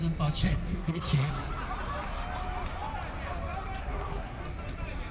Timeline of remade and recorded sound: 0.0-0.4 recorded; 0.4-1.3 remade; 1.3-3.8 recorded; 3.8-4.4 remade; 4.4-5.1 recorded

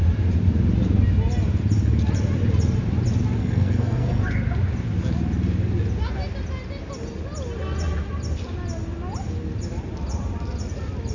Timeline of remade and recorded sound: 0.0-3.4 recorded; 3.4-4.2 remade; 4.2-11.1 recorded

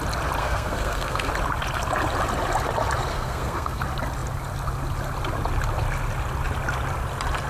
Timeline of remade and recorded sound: 0.0-0.4 recorded; 0.4-1.3 remade; 1.3-3.1 recorded; 3.1-3.8 remade; 3.8-7.5 recorded

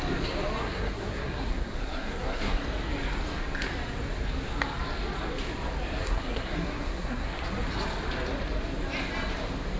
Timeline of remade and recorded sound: 0.0-0.6 recorded; 0.6-2.6 remade; 2.6-6.0 recorded; 6.0-7.4 remade; 7.4-9.8 recorded